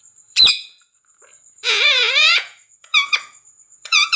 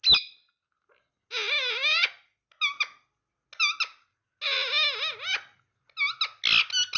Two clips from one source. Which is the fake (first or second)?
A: first